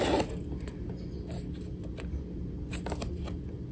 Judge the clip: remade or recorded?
recorded